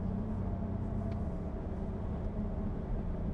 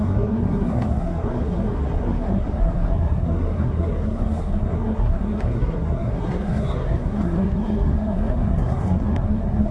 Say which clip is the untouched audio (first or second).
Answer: first